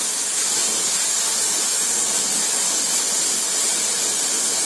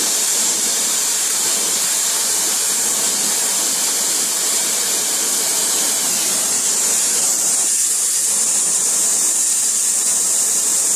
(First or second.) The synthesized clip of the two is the second